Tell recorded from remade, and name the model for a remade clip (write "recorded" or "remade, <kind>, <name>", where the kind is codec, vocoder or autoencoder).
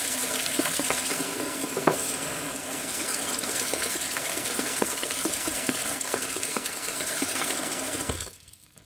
remade, codec, SNAC